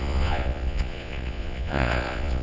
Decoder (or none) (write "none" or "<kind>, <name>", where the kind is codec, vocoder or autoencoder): vocoder, Vocos